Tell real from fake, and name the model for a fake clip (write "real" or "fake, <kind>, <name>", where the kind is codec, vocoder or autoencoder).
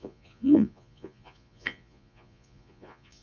fake, vocoder, Vocos